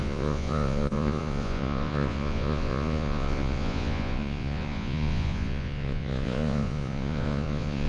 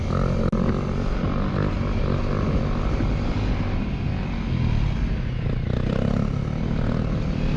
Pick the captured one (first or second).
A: second